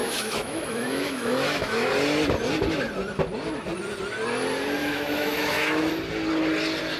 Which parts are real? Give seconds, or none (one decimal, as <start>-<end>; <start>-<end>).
1.9-4.8; 5.9-7.0